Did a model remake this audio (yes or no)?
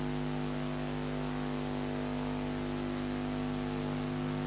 no